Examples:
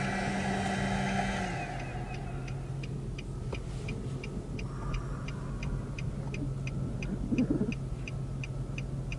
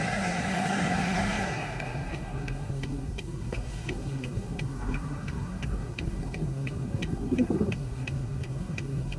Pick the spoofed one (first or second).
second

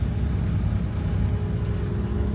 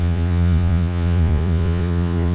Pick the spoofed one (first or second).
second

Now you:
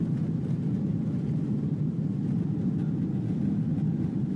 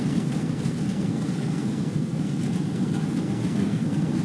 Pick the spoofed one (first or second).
second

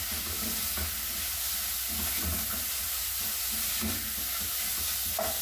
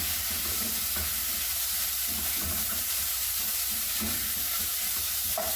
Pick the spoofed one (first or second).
second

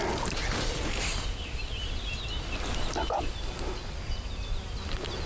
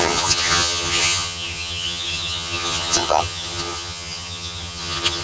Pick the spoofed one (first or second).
second